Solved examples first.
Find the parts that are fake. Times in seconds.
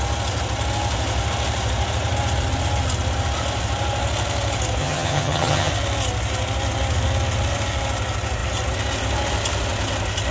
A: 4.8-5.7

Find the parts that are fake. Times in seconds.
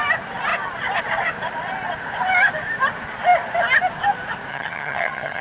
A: 4.5-5.4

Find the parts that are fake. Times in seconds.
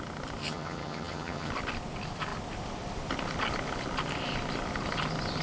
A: 0.4-1.5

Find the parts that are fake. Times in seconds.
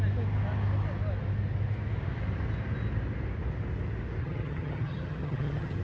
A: 4.2-5.8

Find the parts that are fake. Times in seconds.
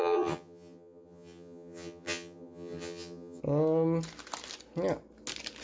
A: 0.0-3.4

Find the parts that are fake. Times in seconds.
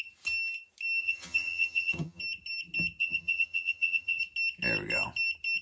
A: 1.0-2.2; 3.0-4.2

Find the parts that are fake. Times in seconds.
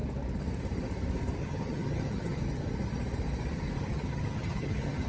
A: 1.4-2.4; 3.9-5.1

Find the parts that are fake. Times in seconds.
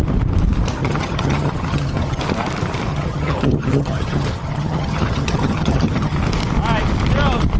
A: 0.8-2.2; 2.9-6.2